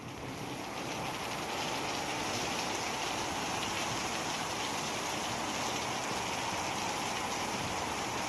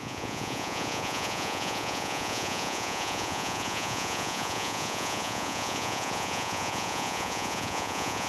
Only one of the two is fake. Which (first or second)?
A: second